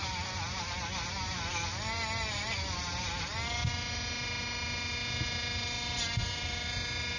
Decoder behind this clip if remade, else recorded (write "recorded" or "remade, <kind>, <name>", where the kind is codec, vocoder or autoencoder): recorded